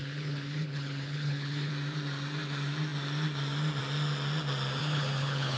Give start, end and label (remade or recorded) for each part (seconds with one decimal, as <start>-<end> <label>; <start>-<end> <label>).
0.0-1.7 remade; 1.7-4.8 recorded; 4.8-5.6 remade